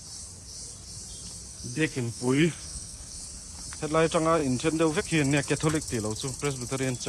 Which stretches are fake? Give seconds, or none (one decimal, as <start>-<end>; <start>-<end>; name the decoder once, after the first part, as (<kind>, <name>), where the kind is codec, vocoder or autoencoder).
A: 1.5-3.2 (codec, SNAC)

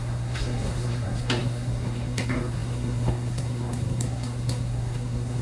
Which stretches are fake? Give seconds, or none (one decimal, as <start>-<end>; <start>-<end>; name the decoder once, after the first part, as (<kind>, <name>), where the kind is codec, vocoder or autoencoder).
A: 0.0-5.4 (codec, SNAC)